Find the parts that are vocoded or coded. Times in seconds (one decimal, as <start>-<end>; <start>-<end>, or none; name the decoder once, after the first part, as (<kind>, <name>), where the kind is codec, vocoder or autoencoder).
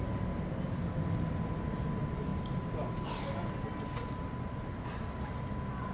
none